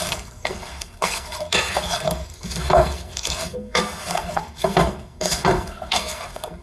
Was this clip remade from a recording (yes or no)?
yes